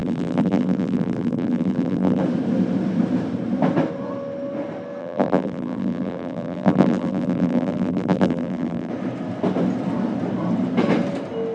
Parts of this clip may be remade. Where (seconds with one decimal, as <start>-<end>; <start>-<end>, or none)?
0.0-2.2; 5.0-8.9